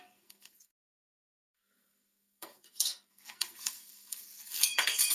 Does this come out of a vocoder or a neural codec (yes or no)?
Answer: yes